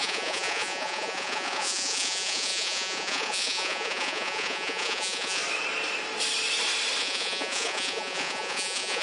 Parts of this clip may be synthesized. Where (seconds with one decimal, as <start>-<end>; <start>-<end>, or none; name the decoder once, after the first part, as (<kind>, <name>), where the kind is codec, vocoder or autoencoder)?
0.0-5.4 (vocoder, Vocos); 7.0-9.0